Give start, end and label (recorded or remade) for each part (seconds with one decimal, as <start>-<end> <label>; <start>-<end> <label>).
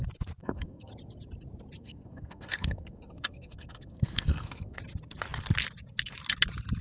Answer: 0.0-0.4 recorded; 0.4-0.9 remade; 0.9-1.8 recorded; 1.8-4.8 remade; 4.8-6.8 recorded